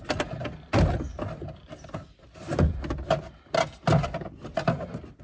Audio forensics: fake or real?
real